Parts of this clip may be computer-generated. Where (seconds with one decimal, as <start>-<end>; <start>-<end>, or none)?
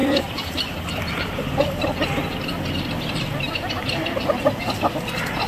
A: 0.0-1.1